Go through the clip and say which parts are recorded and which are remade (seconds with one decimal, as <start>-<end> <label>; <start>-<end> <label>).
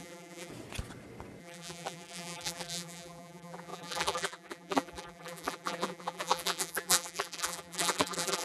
0.0-0.5 remade; 0.5-1.4 recorded; 1.4-8.4 remade